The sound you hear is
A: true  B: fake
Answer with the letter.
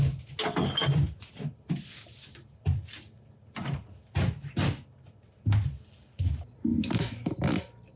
A